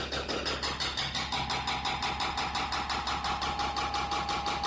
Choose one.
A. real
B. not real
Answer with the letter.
A